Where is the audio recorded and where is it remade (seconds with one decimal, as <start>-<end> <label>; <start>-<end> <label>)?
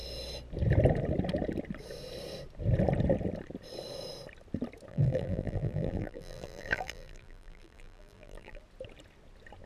0.0-4.9 recorded; 4.9-8.6 remade; 8.6-9.7 recorded